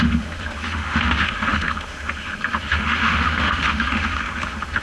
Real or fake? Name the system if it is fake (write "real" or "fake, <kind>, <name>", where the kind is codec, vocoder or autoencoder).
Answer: fake, autoencoder, DAC-VAE